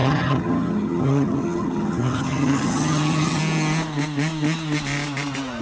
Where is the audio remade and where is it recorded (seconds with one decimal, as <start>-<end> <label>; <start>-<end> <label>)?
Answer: 0.0-3.4 remade; 3.4-5.6 recorded